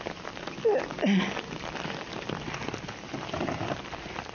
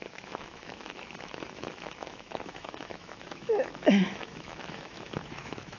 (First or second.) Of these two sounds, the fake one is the second